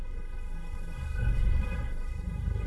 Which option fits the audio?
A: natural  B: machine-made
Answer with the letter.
B